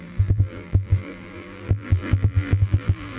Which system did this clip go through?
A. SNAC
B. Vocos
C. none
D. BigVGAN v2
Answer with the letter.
D